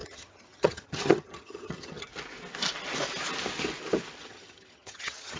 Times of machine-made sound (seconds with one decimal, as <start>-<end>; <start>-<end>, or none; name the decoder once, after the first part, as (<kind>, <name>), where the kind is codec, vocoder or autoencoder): 0.0-2.1 (vocoder, HiFi-GAN); 4.2-5.4